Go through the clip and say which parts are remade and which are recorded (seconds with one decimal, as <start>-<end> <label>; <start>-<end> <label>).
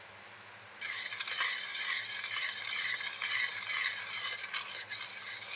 0.0-1.7 recorded; 1.7-2.7 remade; 2.7-5.6 recorded